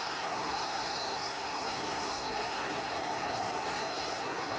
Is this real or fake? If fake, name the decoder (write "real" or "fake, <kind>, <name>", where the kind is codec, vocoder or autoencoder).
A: fake, codec, SNAC